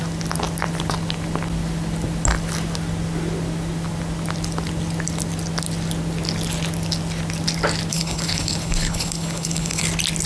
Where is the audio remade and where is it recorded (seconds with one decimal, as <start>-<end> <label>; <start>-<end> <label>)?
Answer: 0.0-7.9 recorded; 7.9-9.8 remade; 9.8-10.3 recorded